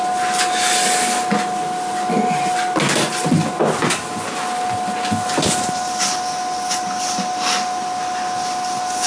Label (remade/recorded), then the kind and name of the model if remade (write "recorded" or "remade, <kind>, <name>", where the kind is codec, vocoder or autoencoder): recorded